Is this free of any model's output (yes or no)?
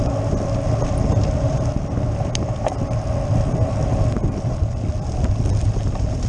yes